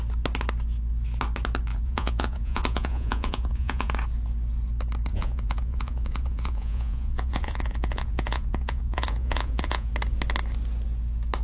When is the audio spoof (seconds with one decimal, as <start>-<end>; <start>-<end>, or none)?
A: 1.7-3.9; 5.1-9.9